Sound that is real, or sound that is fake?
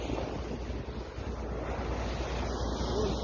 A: real